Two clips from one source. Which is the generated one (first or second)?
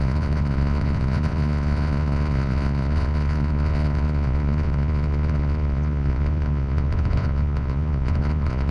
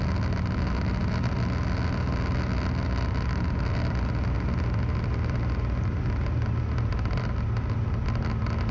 first